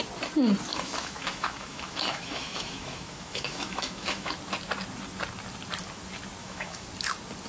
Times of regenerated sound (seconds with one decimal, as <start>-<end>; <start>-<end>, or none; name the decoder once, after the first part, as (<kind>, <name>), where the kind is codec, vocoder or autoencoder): 0.7-4.3 (autoencoder, DAC-VAE); 6.4-6.9